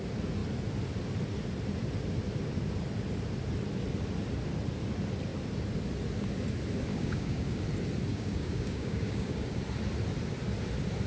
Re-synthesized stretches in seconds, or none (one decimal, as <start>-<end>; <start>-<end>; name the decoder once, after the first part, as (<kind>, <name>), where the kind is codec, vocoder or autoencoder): 6.9-7.6 (codec, DAC); 8.1-9.6